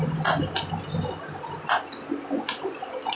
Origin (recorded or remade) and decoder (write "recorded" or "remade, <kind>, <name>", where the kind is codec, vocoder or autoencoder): recorded